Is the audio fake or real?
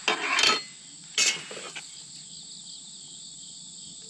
real